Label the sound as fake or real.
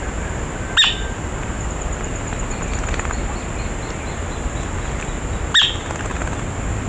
real